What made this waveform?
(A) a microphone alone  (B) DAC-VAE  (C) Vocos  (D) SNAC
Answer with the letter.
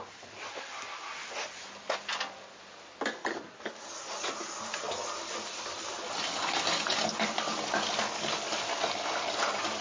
A